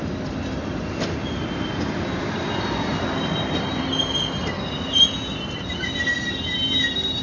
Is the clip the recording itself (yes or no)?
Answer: yes